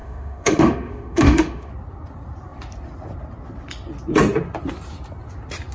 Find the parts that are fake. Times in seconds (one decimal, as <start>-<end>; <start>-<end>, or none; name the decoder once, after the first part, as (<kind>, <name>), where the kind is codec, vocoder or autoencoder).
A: 0.0-1.7 (autoencoder, DAC-VAE)